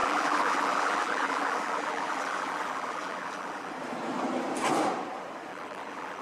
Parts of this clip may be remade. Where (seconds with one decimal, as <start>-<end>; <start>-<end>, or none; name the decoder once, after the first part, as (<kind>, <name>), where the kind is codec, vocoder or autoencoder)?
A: 0.0-3.7 (vocoder, BigVGAN v2); 5.5-6.2